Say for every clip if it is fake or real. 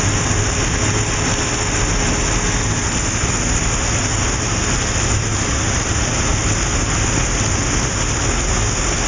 real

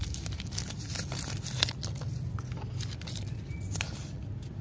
real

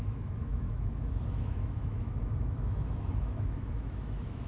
fake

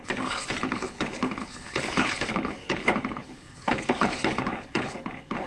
fake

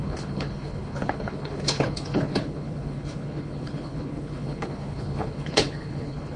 fake